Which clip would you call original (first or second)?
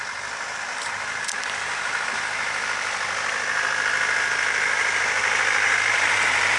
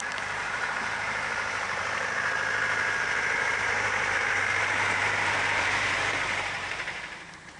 first